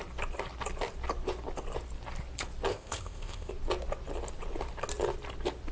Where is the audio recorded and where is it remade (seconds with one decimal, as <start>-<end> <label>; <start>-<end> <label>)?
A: 0.0-2.7 recorded; 2.7-3.5 remade; 3.5-5.7 recorded